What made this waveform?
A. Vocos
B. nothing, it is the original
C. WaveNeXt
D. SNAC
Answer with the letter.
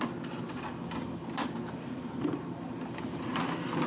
B